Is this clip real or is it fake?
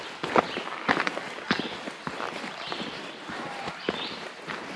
real